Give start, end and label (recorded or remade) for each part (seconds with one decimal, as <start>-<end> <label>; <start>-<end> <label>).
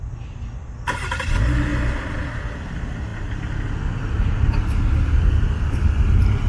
0.0-6.5 recorded